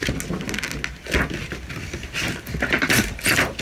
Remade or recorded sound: recorded